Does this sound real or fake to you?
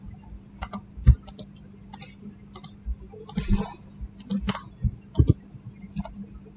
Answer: real